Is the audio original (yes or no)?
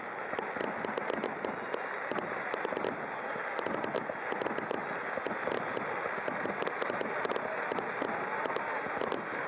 yes